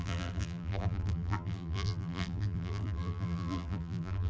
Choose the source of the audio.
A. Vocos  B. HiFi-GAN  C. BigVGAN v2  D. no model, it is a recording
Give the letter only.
C